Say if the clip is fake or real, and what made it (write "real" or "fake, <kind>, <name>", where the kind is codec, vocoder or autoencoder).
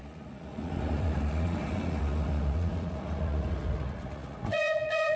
fake, vocoder, Vocos